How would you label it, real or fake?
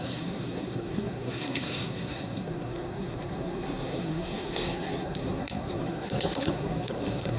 fake